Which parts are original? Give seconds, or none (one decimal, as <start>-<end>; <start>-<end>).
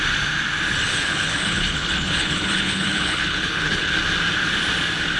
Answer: 0.0-0.9; 4.0-5.2